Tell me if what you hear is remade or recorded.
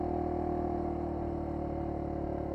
recorded